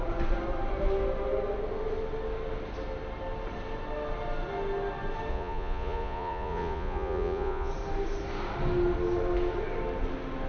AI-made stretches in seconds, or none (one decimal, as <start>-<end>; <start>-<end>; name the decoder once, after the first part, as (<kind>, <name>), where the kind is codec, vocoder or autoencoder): 5.3-7.7 (vocoder, Vocos)